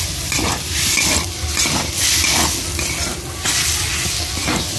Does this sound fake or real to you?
real